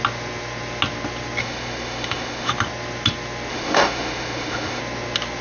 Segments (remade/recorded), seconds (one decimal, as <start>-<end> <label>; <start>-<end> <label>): 0.0-1.4 recorded; 1.4-2.5 remade; 2.5-3.5 recorded; 3.5-4.8 remade; 4.8-5.4 recorded